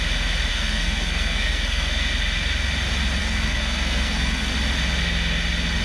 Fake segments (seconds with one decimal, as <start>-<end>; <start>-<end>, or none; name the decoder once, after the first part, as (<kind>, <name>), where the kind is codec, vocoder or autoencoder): 0.5-2.1 (codec, SNAC); 3.2-4.5